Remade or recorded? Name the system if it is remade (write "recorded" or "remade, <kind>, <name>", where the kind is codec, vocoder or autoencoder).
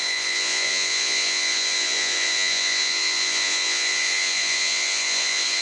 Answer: remade, vocoder, Vocos